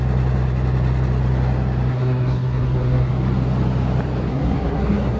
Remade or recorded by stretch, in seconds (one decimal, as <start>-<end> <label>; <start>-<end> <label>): 0.0-1.9 recorded; 1.9-3.1 remade; 3.1-4.3 recorded; 4.3-5.2 remade